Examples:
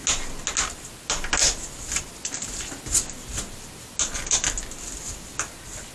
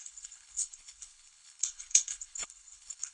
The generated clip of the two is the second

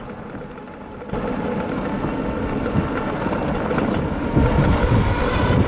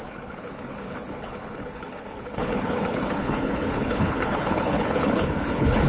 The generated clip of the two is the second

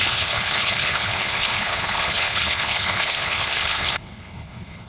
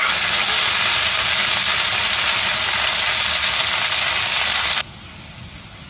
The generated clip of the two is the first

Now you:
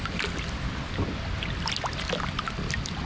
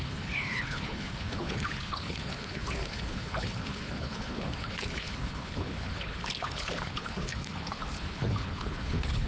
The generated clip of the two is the second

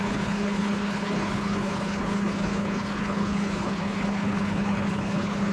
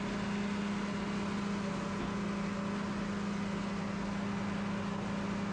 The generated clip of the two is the first